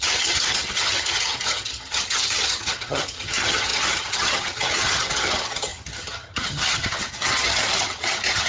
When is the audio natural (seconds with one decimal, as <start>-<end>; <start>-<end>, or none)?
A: none